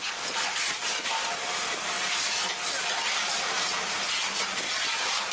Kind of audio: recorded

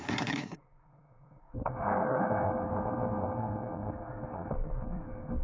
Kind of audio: remade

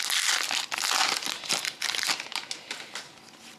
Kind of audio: recorded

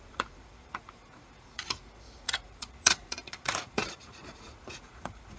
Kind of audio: remade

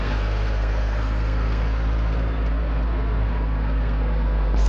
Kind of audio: remade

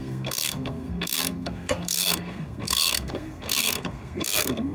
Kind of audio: remade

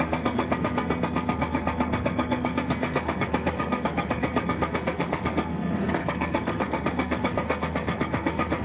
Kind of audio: remade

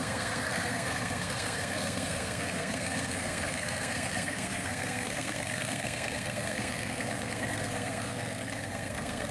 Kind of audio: remade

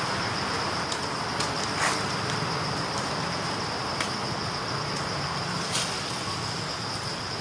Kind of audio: recorded